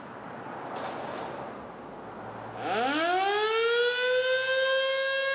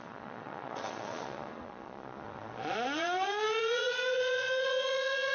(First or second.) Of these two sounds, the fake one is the second